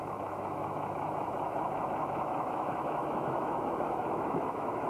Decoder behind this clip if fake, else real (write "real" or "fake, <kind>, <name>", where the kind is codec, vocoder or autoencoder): fake, autoencoder, DAC-VAE